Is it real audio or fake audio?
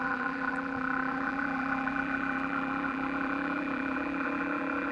fake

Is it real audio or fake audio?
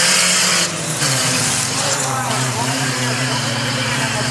fake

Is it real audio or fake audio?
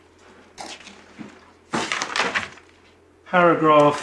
real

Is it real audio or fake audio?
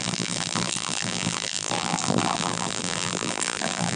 fake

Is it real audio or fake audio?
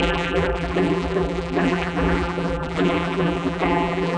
fake